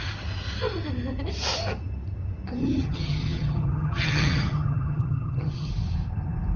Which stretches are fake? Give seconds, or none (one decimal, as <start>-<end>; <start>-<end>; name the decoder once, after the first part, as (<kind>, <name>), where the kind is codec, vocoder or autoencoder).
2.6-5.7 (vocoder, HiFi-GAN)